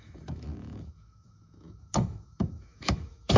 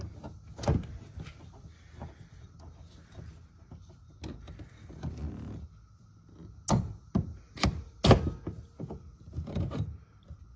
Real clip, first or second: second